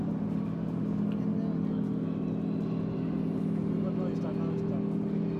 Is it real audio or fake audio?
real